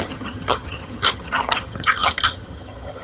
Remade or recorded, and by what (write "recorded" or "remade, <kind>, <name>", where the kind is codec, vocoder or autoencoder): remade, vocoder, HiFi-GAN